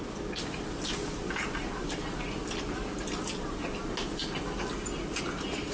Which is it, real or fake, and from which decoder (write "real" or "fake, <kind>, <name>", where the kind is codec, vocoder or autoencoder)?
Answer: real